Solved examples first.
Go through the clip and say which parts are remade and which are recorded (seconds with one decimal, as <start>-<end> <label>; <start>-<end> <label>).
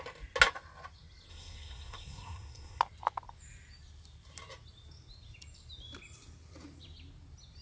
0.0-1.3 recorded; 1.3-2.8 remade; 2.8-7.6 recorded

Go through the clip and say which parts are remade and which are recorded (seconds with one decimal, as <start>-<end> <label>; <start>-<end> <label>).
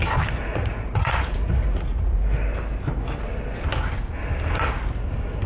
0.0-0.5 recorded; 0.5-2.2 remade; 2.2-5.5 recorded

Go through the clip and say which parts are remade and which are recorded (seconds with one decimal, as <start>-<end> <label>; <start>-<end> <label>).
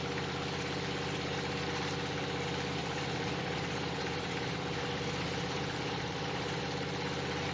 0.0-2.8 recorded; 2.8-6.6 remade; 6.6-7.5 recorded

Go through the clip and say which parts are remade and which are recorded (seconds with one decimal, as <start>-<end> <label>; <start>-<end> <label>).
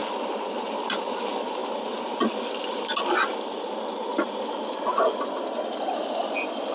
0.0-6.7 recorded